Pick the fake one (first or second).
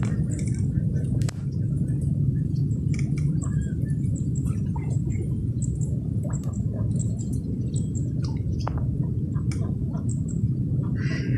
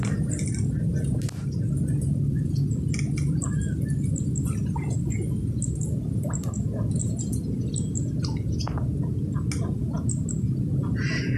first